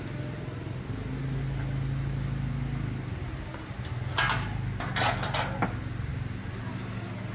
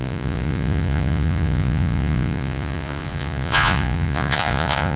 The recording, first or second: first